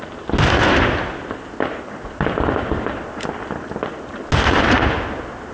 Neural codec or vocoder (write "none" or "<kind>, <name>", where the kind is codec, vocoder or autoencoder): none